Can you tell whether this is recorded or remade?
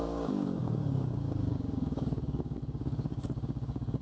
remade